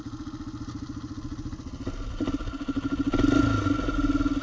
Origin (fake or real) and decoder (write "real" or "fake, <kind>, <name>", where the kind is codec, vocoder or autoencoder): real